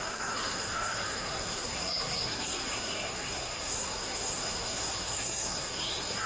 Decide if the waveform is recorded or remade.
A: remade